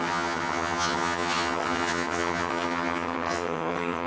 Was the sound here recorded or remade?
remade